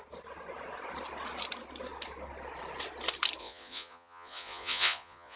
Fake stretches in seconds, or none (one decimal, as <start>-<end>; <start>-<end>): 3.4-5.4